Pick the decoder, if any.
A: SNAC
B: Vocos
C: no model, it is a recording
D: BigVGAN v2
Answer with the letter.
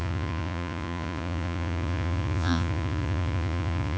B